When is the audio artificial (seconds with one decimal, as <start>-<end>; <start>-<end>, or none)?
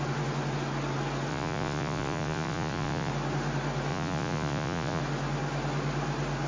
1.3-3.1; 3.9-5.0